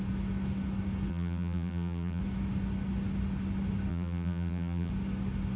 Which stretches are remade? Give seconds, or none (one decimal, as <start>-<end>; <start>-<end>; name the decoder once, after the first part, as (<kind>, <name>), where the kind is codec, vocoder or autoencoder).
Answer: 1.1-2.2 (vocoder, BigVGAN v2); 3.9-4.9